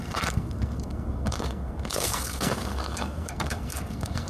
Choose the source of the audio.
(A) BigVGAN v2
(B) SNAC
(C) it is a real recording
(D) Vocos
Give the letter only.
B